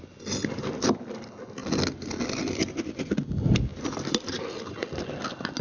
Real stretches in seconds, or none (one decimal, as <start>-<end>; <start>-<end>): 0.0-5.6